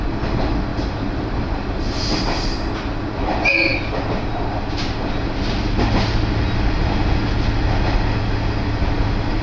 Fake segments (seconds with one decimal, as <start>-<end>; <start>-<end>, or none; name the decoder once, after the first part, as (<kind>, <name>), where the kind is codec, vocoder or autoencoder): 0.7-2.7 (vocoder, BigVGAN v2)